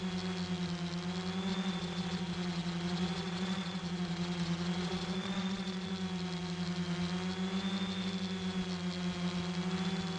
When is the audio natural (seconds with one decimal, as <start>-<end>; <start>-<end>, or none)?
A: 0.0-1.5; 5.9-10.2